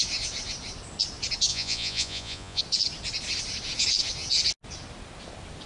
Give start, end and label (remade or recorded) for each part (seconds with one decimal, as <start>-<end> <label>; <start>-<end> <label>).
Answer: 0.0-1.5 recorded; 1.5-2.6 remade; 2.6-5.7 recorded